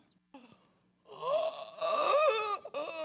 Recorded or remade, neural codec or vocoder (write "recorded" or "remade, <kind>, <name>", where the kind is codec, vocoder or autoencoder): recorded